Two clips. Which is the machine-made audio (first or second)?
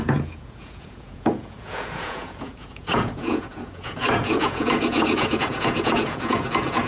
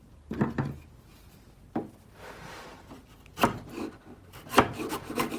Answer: first